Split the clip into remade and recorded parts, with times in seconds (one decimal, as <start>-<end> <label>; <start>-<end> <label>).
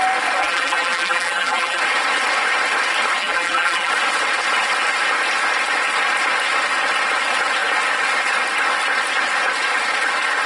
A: 0.0-0.4 recorded; 0.4-1.8 remade; 1.8-3.2 recorded; 3.2-3.9 remade; 3.9-10.5 recorded